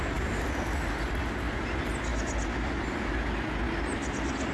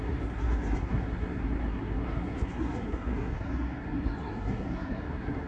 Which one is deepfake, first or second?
second